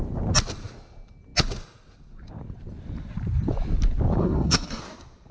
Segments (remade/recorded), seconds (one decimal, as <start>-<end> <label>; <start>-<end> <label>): 0.0-4.2 recorded; 4.2-4.8 remade; 4.8-5.3 recorded